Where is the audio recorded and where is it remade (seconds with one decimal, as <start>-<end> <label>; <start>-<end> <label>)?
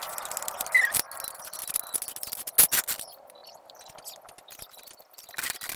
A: 0.0-5.8 recorded